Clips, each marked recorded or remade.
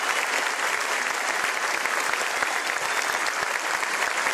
recorded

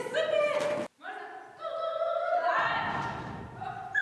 recorded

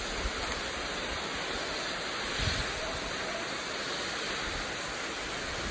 recorded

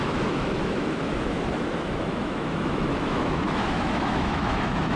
remade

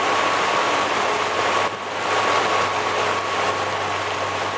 recorded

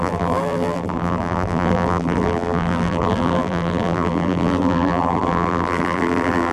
remade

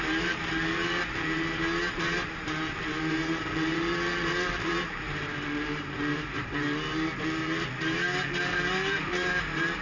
remade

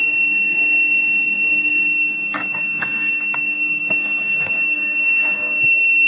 remade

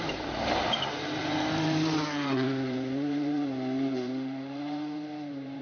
remade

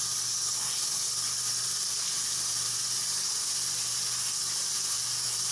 recorded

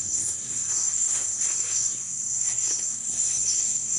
remade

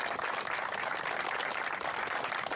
recorded